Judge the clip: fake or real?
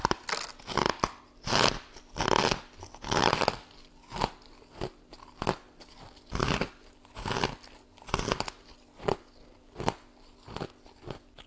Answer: real